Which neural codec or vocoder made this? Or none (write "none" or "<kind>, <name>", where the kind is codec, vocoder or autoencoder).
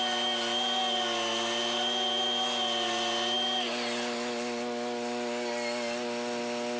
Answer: none